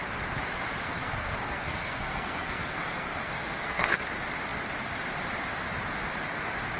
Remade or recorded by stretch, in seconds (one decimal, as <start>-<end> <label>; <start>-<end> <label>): 0.0-0.8 recorded; 0.8-4.0 remade; 4.0-6.8 recorded